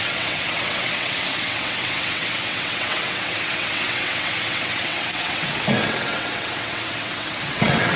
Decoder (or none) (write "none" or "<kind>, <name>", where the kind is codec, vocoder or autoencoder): vocoder, WaveNeXt